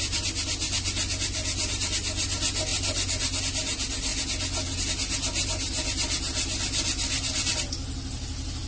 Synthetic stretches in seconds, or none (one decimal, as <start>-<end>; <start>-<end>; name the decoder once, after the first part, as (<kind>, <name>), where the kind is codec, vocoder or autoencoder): none